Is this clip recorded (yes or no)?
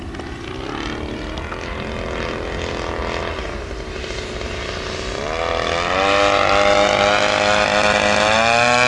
yes